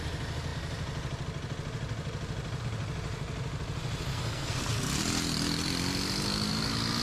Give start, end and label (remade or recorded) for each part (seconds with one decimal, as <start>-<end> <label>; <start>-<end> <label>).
0.0-4.1 recorded; 4.1-4.6 remade; 4.6-7.0 recorded